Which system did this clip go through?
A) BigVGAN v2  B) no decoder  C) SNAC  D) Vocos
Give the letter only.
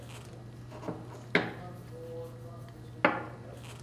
B